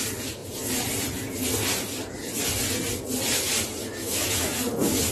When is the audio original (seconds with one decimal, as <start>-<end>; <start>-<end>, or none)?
0.0-3.8